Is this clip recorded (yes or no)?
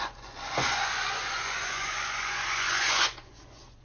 no